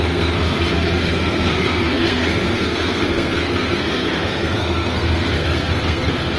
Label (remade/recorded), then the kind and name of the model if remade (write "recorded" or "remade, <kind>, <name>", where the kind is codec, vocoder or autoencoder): remade, codec, SNAC